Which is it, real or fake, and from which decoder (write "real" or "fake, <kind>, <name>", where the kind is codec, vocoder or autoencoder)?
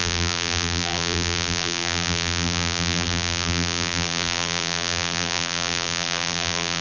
fake, vocoder, BigVGAN v2